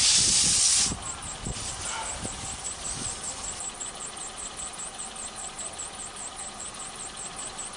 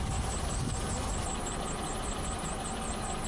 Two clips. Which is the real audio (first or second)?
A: second